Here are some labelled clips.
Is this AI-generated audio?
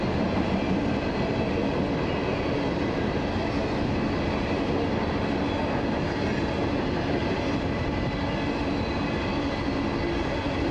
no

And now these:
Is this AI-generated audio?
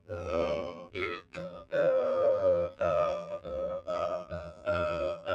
yes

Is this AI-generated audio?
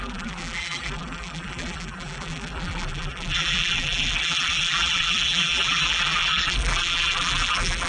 yes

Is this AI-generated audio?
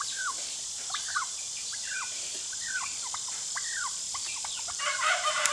yes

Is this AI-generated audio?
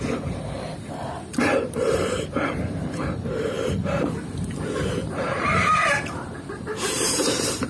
yes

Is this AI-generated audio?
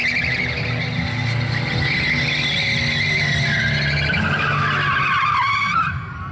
no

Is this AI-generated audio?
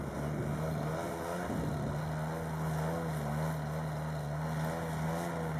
no